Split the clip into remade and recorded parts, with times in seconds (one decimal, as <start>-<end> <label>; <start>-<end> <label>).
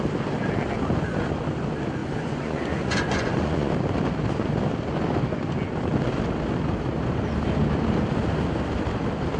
0.0-2.0 recorded; 2.0-3.7 remade; 3.7-9.4 recorded